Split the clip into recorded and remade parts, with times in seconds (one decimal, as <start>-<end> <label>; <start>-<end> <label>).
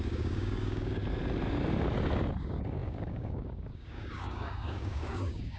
0.0-1.0 remade; 1.0-2.4 recorded; 2.4-5.6 remade